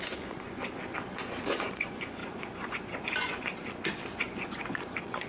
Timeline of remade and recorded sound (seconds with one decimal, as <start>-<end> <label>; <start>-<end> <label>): 0.0-0.6 remade; 0.6-1.5 recorded; 1.5-3.5 remade; 3.5-4.1 recorded; 4.1-5.3 remade